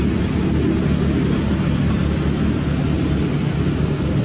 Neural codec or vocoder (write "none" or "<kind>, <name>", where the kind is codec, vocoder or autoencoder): none